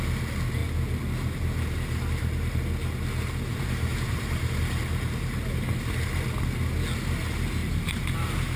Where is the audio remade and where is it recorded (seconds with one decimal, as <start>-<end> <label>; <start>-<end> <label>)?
0.0-3.5 recorded; 3.5-4.5 remade; 4.5-7.6 recorded; 7.6-8.6 remade